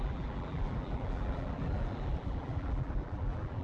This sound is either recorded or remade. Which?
remade